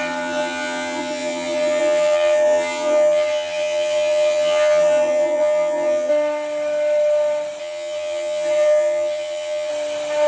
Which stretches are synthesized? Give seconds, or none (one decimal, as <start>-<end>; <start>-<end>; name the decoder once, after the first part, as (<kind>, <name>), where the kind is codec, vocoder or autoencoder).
0.0-6.1 (vocoder, HiFi-GAN); 7.6-9.7